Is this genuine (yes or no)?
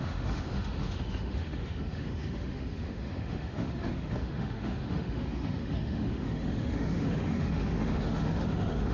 no